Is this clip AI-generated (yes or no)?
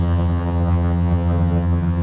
yes